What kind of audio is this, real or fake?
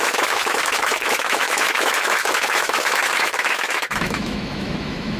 fake